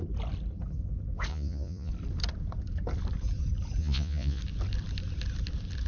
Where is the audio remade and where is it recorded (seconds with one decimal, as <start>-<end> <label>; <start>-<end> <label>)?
0.0-1.3 recorded; 1.3-1.9 remade; 1.9-3.8 recorded; 3.8-4.4 remade; 4.4-5.9 recorded